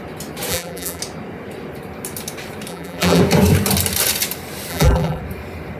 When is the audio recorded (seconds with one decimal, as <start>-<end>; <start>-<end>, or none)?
0.0-0.5; 1.0-2.7; 3.2-4.7; 5.2-5.8